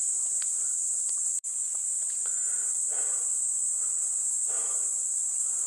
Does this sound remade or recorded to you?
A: remade